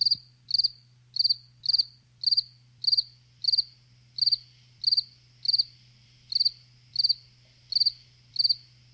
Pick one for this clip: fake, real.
real